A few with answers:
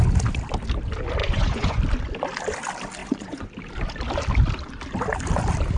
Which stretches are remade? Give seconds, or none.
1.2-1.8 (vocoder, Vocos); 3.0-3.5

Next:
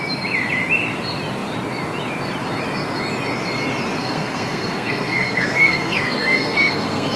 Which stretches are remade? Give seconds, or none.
4.0-7.2 (codec, SNAC)

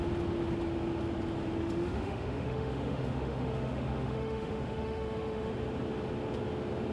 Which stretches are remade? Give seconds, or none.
1.6-5.5 (autoencoder, DAC-VAE)

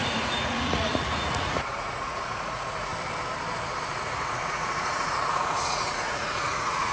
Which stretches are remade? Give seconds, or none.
0.0-2.9 (vocoder, Vocos); 3.8-6.9

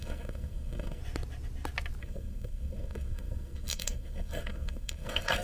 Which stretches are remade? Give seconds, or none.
0.0-1.0 (codec, SNAC); 2.0-5.4